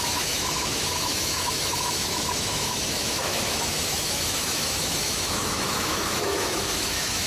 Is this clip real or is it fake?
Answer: fake